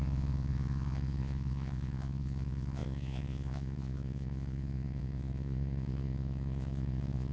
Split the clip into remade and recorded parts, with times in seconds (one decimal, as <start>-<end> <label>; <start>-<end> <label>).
0.0-7.3 remade